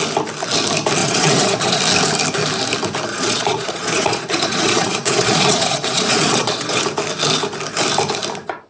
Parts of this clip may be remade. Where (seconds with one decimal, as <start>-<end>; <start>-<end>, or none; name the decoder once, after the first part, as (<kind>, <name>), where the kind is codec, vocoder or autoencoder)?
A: 1.0-1.8 (vocoder, Vocos); 3.1-6.8